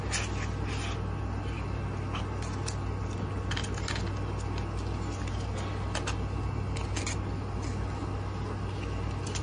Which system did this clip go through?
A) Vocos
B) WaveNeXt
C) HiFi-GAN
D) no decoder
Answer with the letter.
D